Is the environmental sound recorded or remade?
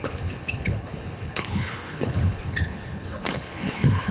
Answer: remade